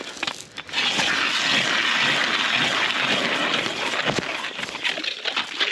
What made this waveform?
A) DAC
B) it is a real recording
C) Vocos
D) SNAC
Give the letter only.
B